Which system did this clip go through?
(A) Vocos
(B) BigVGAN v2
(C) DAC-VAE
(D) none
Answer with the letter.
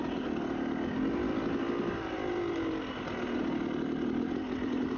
D